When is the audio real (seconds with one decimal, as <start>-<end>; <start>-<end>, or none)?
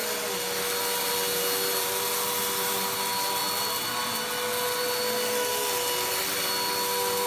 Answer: 0.0-7.3